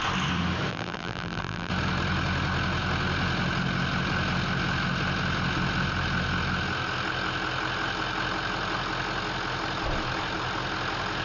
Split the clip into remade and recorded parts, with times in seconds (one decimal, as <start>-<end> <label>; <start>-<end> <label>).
0.0-0.7 recorded; 0.7-1.7 remade; 1.7-11.2 recorded